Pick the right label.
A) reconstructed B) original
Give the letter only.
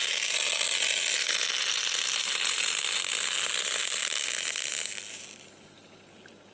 B